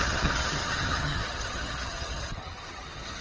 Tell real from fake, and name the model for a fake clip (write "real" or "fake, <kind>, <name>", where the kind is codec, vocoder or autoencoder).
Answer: fake, vocoder, HiFi-GAN